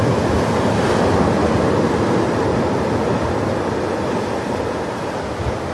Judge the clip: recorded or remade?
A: recorded